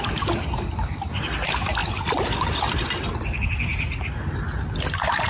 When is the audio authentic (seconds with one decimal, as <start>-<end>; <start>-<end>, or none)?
0.0-5.3